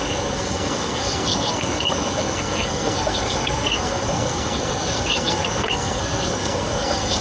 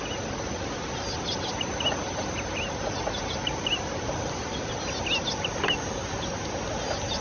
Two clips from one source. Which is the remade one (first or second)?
first